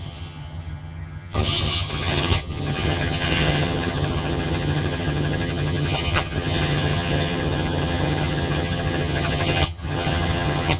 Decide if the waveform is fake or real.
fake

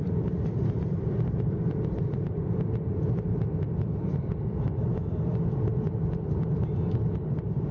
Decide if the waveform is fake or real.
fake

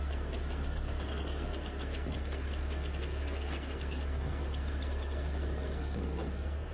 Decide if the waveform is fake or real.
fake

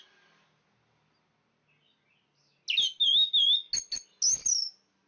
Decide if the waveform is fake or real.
real